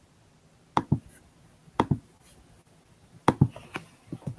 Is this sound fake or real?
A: real